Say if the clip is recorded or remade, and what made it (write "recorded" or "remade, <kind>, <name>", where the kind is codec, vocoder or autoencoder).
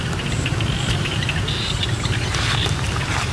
recorded